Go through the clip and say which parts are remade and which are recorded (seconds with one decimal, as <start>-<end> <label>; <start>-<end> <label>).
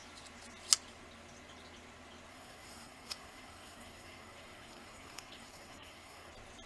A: 0.0-2.3 recorded; 2.3-6.3 remade; 6.3-6.7 recorded